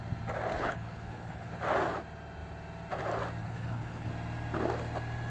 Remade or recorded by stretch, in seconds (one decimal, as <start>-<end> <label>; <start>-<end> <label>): 0.0-0.5 recorded; 0.5-1.5 remade; 1.5-3.4 recorded; 3.4-4.1 remade; 4.1-5.3 recorded